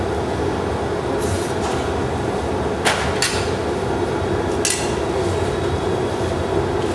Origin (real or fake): real